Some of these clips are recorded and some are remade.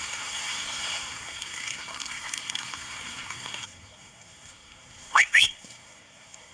remade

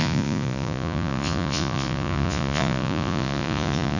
remade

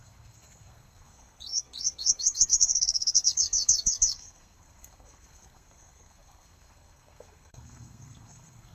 remade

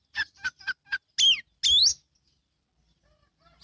recorded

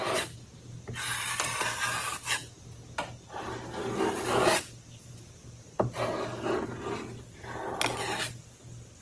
recorded